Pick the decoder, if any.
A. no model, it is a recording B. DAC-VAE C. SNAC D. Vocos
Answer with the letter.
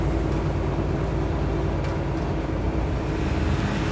A